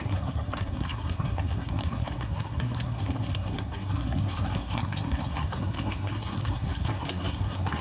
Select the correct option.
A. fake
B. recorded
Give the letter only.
A